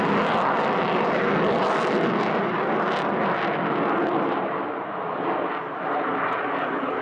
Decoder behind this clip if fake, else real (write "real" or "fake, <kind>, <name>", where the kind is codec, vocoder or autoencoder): real